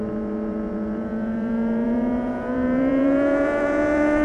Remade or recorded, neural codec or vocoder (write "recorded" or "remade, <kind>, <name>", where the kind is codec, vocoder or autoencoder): remade, vocoder, Vocos